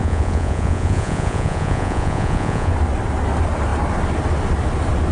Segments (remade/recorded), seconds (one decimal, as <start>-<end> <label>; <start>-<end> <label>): 0.0-2.7 remade; 2.7-5.1 recorded